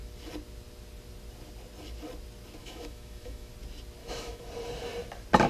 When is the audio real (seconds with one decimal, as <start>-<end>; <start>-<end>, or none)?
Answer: 0.0-2.6; 3.5-4.0; 4.5-5.5